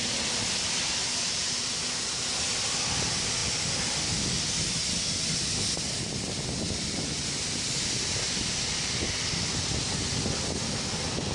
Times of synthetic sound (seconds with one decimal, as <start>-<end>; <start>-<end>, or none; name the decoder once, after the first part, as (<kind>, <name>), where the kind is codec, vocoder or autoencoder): none